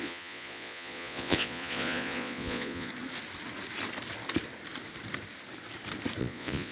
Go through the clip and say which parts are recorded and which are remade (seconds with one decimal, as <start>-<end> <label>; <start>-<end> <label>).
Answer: 0.0-2.9 remade; 2.9-6.2 recorded; 6.2-6.7 remade